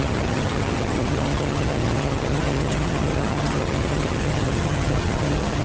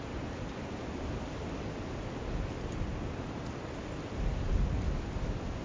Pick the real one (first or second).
second